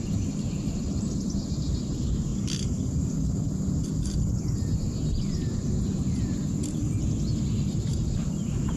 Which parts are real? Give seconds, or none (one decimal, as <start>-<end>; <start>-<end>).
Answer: 2.3-7.6